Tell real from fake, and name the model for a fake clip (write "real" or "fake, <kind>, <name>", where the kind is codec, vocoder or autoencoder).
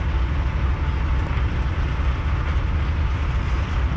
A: real